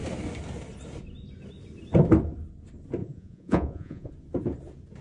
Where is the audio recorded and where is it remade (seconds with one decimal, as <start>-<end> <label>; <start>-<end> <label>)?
0.0-3.0 recorded; 3.0-4.1 remade; 4.1-5.0 recorded